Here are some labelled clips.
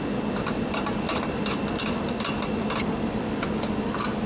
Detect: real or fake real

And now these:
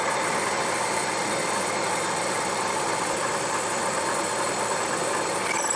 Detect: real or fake fake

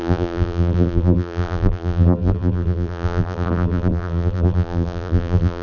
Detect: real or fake fake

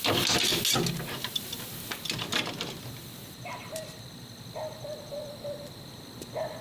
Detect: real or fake real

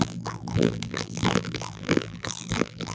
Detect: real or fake fake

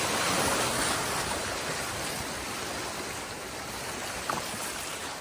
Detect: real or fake real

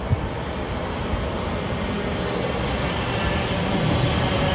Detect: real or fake real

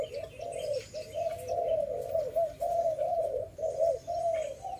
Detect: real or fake fake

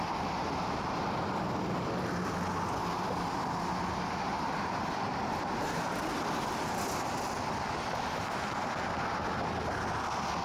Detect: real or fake real